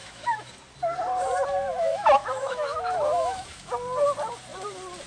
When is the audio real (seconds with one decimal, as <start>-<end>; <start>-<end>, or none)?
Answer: 0.5-1.7; 3.7-5.1